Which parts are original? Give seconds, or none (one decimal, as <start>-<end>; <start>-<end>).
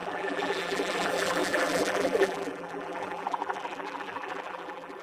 none